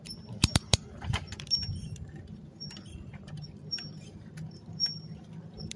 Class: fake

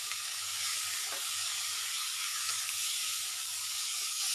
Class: fake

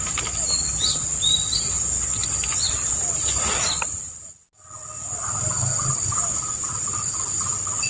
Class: real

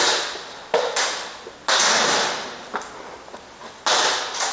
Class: real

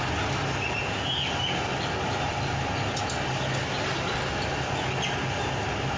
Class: real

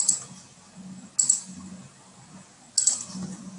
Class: real